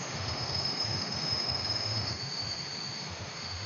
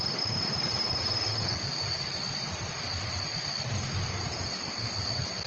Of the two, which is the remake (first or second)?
first